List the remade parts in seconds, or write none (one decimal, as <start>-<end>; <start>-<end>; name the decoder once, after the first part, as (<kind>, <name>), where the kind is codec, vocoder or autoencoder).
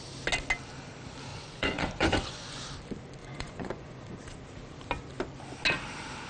1.3-2.6 (vocoder, Vocos); 3.2-4.0